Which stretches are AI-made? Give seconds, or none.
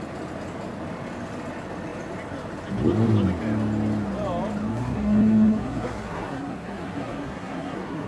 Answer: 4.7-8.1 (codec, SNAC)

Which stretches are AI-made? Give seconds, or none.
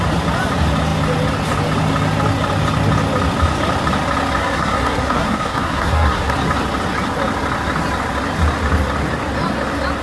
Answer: 4.4-6.3 (codec, SNAC)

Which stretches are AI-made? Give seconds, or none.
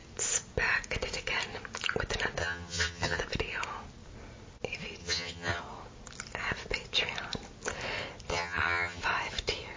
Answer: 2.4-3.2 (vocoder, HiFi-GAN); 5.0-5.6; 8.3-9.0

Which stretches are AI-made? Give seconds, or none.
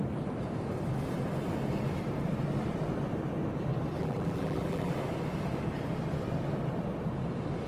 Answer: 4.0-4.9 (vocoder, BigVGAN v2)